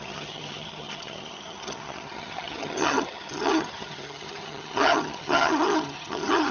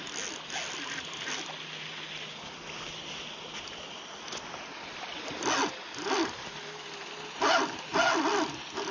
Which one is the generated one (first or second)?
first